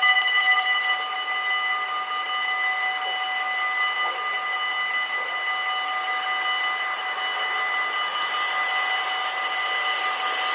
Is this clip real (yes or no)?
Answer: yes